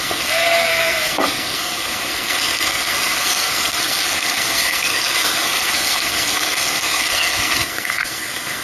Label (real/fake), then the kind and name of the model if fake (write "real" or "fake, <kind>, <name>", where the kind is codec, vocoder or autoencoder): fake, codec, SNAC